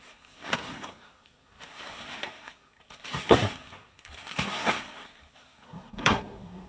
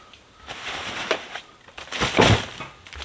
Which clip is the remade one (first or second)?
first